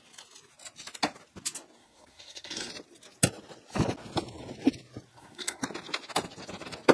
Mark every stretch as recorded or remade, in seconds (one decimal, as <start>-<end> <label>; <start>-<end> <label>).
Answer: 0.0-1.8 recorded; 1.8-2.7 remade; 2.7-5.1 recorded; 5.1-5.6 remade; 5.6-6.9 recorded